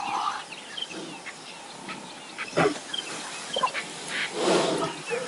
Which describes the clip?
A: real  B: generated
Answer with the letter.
A